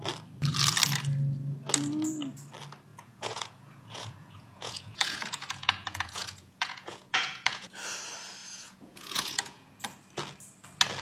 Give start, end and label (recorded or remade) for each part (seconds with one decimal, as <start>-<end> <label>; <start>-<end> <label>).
0.0-2.9 recorded; 2.9-7.7 remade; 7.7-8.4 recorded; 8.4-9.7 remade; 9.7-11.0 recorded